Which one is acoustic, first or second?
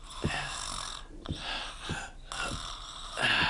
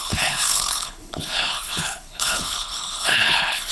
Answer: first